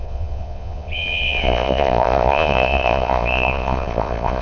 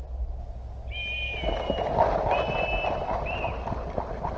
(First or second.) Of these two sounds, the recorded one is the second